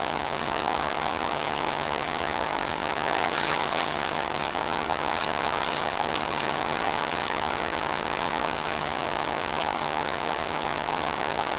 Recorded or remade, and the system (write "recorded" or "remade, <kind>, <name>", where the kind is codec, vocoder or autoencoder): remade, vocoder, HiFi-GAN